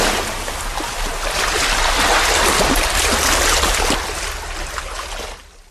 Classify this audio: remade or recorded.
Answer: recorded